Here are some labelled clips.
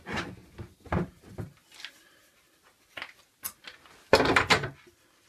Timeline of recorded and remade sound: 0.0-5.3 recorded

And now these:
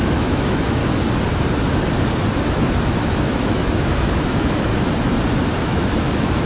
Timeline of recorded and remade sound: 0.0-0.8 remade; 0.8-2.8 recorded; 2.8-4.7 remade; 4.7-5.6 recorded; 5.6-6.5 remade

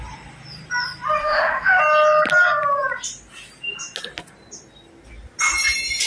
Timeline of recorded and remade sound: 0.0-1.2 recorded; 1.2-1.8 remade; 1.8-6.1 recorded

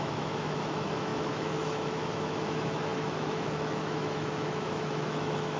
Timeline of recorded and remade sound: 0.0-5.6 remade

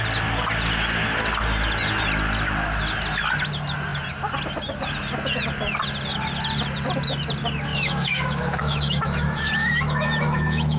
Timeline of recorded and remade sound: 0.0-7.7 recorded; 7.7-10.8 remade